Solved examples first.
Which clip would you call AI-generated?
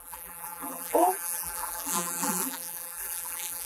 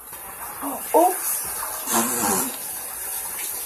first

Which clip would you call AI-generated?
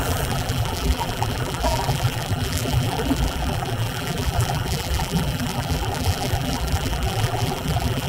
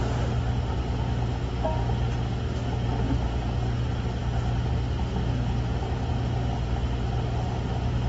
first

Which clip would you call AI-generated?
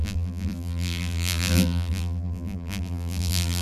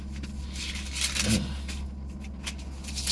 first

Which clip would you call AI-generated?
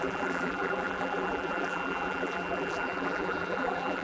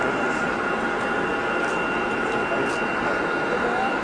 first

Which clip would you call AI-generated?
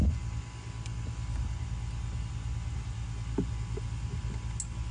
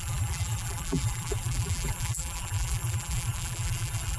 second